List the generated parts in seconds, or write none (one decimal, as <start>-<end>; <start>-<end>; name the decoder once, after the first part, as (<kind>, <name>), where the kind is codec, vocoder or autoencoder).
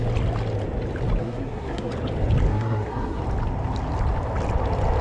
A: 1.2-1.9 (codec, SNAC); 2.5-3.2